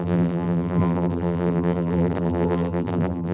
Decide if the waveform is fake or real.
fake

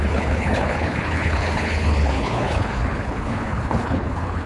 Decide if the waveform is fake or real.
fake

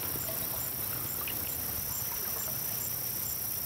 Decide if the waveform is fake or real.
real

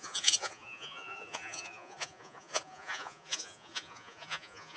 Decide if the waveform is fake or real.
fake